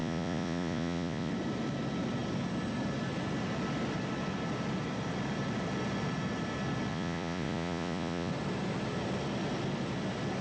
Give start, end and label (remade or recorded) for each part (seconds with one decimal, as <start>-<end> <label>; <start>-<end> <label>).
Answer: 0.0-1.3 remade; 1.3-6.9 recorded; 6.9-8.3 remade; 8.3-10.4 recorded